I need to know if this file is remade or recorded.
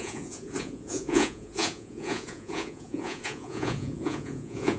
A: remade